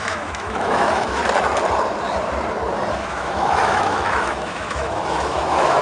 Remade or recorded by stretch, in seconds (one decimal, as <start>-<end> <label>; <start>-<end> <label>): 0.0-1.2 remade; 1.2-2.9 recorded; 2.9-5.8 remade